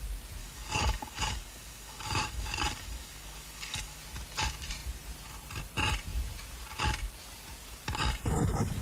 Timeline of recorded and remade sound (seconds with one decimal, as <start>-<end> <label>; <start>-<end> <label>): 0.0-0.4 recorded; 0.4-4.0 remade; 4.0-8.8 recorded